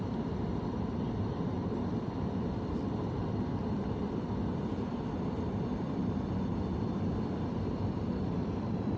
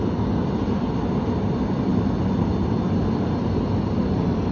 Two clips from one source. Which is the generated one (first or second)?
first